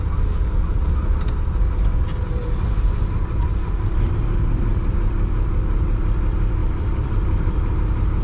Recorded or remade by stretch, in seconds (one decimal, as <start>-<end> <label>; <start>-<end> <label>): 0.0-1.9 recorded; 1.9-4.1 remade; 4.1-6.6 recorded; 6.6-7.7 remade; 7.7-8.2 recorded